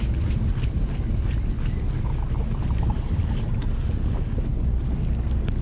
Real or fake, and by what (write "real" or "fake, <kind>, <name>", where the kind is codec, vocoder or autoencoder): real